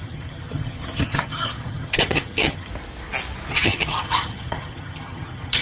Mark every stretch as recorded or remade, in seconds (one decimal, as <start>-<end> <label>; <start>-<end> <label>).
0.0-2.7 remade; 2.7-3.5 recorded; 3.5-5.6 remade